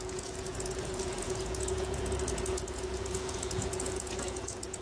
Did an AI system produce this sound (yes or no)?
yes